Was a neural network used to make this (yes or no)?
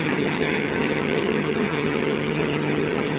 yes